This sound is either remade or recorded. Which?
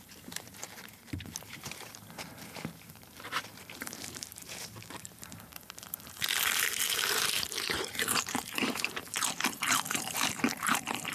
remade